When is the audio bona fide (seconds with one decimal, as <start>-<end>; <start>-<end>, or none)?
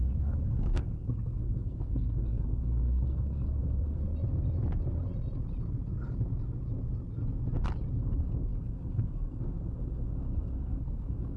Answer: 4.0-8.0